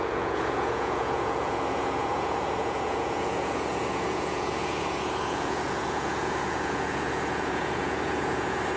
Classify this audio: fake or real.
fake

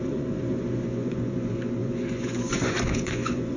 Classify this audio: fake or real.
fake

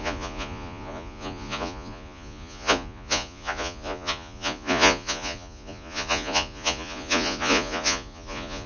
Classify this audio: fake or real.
fake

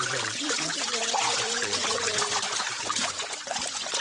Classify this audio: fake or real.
fake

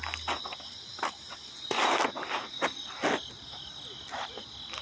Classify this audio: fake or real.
real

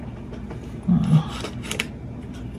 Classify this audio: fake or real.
real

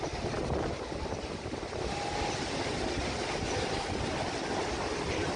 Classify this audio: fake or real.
real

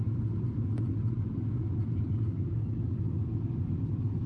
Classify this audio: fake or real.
real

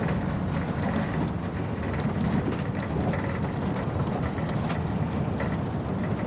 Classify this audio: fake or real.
real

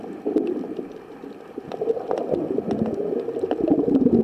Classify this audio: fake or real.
real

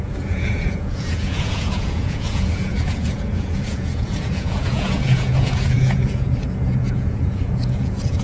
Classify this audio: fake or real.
fake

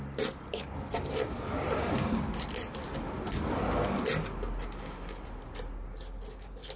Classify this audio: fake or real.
real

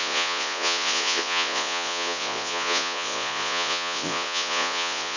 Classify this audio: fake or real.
fake